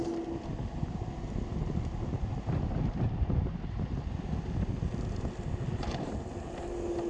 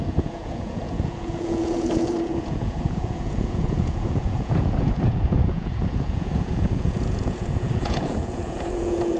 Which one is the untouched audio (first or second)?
first